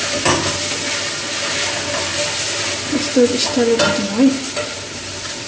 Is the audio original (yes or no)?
yes